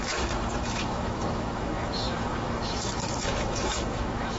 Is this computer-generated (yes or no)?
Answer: yes